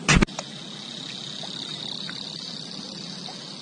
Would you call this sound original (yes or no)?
yes